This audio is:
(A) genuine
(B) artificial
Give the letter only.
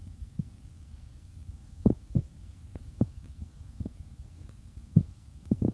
B